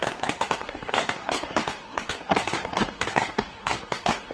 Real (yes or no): no